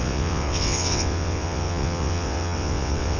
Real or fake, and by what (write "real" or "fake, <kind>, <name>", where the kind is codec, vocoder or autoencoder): fake, vocoder, WaveNeXt